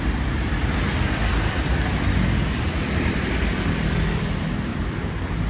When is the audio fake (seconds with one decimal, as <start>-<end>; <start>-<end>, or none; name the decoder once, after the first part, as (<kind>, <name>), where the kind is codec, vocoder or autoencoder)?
0.6-3.9 (vocoder, BigVGAN v2); 4.7-5.5